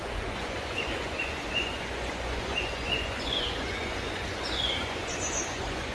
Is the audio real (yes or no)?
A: no